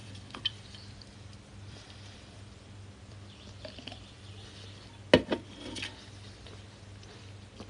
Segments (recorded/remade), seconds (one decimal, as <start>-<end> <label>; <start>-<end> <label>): 0.0-4.6 remade; 4.6-7.7 recorded